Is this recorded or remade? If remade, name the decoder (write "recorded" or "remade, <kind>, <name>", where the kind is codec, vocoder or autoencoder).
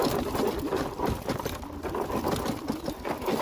recorded